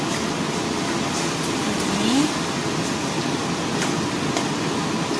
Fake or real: real